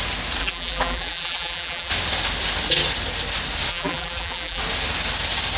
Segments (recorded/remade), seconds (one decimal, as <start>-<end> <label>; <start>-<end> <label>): 0.0-0.4 recorded; 0.4-1.9 remade; 1.9-3.7 recorded; 3.7-4.6 remade; 4.6-5.6 recorded